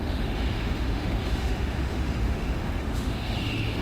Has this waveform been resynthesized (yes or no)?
yes